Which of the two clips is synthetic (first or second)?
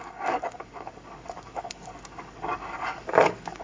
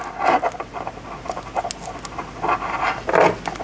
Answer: first